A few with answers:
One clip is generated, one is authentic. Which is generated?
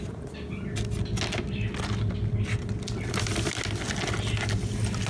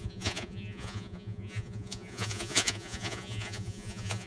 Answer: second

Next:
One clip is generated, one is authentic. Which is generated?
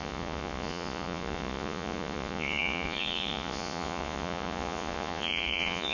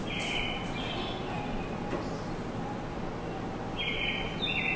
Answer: first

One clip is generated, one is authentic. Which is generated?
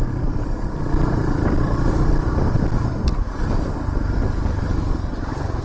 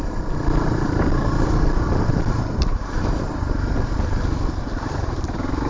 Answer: second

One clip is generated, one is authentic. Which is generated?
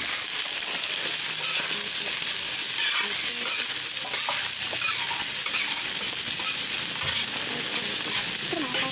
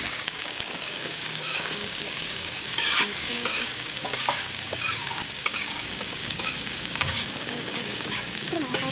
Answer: second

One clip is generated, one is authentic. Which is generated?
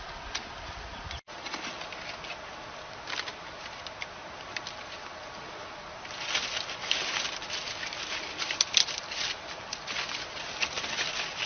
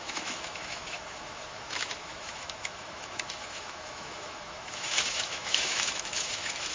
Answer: second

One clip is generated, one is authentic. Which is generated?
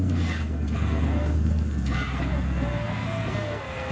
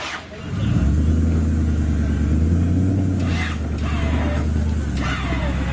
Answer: first